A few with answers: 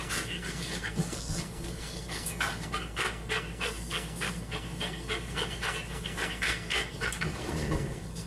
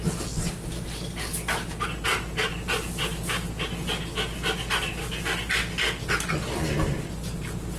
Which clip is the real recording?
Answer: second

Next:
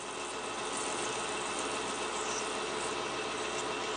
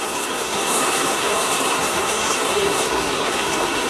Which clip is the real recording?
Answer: first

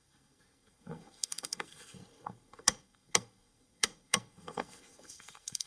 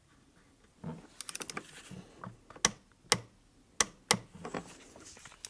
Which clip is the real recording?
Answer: second